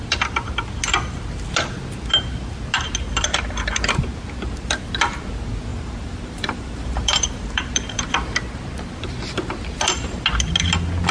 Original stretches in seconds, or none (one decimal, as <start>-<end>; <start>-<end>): 0.0-5.7; 8.1-11.1